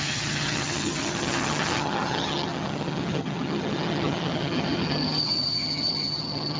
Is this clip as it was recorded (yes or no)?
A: no